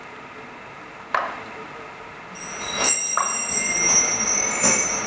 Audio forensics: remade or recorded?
recorded